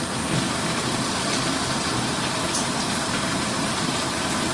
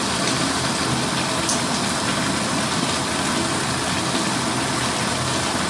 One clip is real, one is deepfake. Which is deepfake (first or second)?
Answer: first